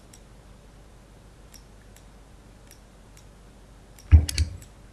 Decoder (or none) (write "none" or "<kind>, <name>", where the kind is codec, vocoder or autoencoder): none